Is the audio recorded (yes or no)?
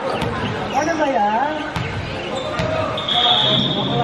yes